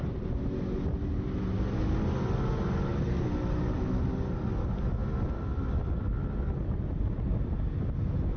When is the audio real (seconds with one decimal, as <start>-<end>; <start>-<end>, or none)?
0.0-8.4